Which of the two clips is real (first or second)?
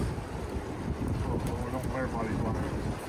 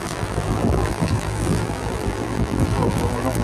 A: first